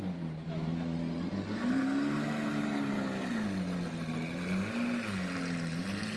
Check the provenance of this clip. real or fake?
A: real